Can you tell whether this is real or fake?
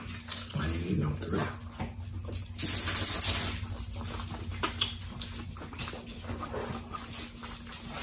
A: real